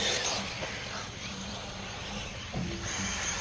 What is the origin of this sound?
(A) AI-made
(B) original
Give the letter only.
B